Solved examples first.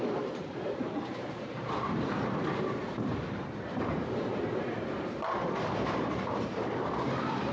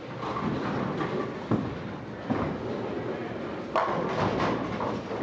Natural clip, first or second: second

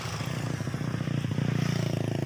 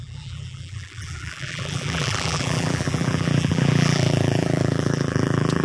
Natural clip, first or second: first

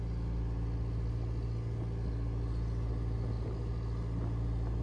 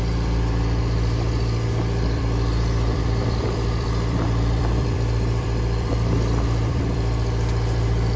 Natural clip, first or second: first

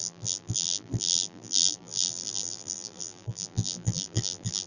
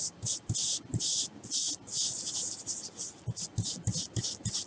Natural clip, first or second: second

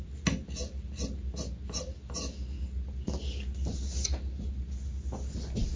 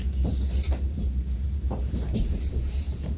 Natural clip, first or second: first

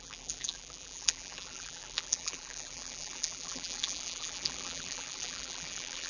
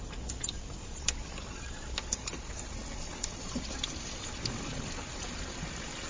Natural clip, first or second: second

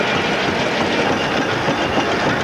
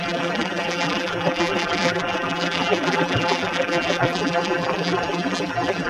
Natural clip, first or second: first